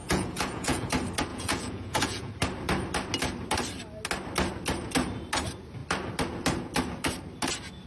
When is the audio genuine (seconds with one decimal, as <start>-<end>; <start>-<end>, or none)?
0.9-1.3; 2.3-7.9